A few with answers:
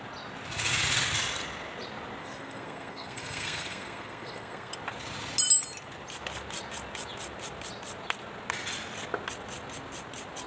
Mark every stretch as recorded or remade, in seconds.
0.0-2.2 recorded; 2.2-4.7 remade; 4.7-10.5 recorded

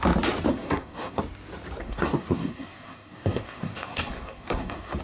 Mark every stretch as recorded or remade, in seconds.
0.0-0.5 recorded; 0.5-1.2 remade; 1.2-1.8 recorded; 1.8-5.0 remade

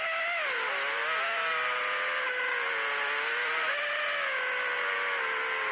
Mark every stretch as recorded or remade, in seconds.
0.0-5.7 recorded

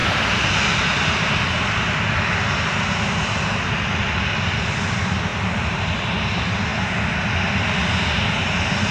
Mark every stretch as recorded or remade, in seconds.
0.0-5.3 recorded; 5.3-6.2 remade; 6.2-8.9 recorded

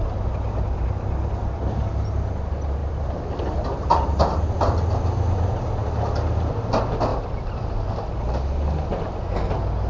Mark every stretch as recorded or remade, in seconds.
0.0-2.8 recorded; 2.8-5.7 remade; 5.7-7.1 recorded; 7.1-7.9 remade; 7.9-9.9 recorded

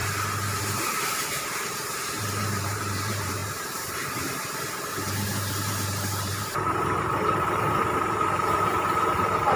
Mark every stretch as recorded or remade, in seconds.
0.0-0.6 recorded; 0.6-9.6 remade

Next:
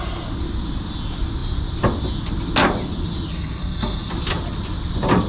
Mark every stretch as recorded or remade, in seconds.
0.0-3.3 recorded; 3.3-4.1 remade; 4.1-5.3 recorded

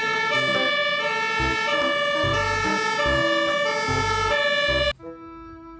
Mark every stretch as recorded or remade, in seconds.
0.0-5.8 recorded